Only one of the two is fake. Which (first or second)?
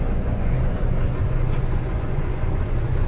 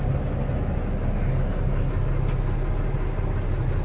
first